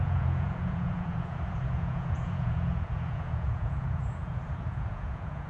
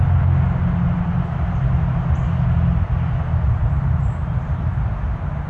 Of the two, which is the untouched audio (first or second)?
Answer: second